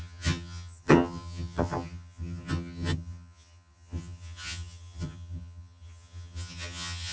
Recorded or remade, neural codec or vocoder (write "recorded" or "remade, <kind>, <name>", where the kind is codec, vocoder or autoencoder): remade, vocoder, HiFi-GAN